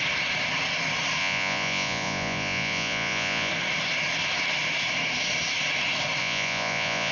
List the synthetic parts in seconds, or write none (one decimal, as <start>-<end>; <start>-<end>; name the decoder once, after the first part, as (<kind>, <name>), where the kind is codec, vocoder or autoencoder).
1.2-3.5 (vocoder, Vocos); 6.2-7.1

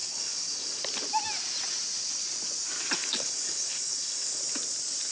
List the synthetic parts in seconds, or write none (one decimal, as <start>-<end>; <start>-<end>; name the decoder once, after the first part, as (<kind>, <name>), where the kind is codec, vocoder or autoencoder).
0.0-0.8 (codec, DAC); 3.0-4.4

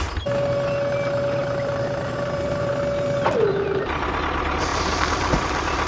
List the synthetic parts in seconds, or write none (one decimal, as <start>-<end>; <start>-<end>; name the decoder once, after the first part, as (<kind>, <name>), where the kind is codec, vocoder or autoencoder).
1.4-2.7 (vocoder, BigVGAN v2); 3.5-4.0; 4.7-5.4

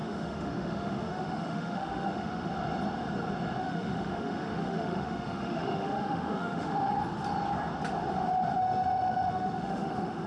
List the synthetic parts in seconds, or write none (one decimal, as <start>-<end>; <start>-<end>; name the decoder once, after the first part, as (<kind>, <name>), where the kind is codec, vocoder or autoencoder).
0.0-2.5 (autoencoder, DAC-VAE); 3.6-6.9; 8.6-10.3